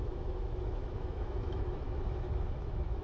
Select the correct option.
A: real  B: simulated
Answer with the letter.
B